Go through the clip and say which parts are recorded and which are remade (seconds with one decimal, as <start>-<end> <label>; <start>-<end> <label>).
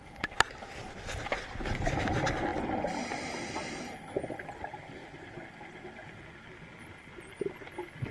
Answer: 0.0-8.1 recorded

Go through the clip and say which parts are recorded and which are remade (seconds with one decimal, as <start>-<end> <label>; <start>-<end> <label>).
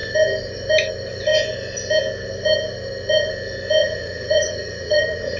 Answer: 0.0-3.8 recorded; 3.8-5.4 remade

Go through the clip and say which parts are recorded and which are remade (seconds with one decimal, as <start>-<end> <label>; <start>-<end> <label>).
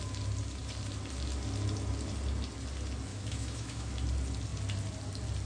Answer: 0.0-3.1 recorded; 3.1-3.9 remade; 3.9-5.5 recorded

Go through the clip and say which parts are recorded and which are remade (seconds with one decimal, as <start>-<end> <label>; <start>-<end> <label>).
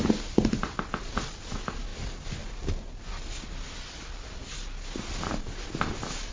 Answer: 0.0-6.3 recorded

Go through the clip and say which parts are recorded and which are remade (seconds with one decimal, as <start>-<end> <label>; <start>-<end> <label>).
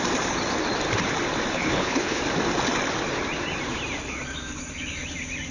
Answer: 0.0-1.5 recorded; 1.5-2.2 remade; 2.2-5.5 recorded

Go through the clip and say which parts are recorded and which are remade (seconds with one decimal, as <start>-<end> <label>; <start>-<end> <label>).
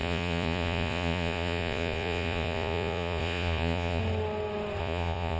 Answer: 0.0-4.0 remade; 4.0-4.8 recorded; 4.8-5.4 remade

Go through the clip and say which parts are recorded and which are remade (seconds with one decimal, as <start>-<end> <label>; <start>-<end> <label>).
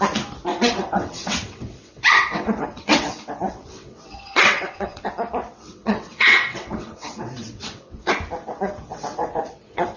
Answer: 0.0-0.5 recorded; 0.5-5.0 remade; 5.0-5.4 recorded; 5.4-8.1 remade; 8.1-8.5 recorded; 8.5-10.0 remade